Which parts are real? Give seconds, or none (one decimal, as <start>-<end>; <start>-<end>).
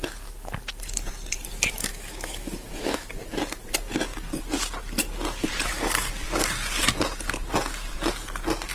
0.0-1.9; 3.1-8.7